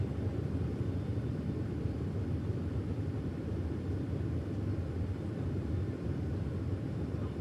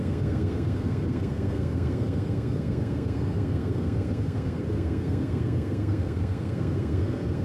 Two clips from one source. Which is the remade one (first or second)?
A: second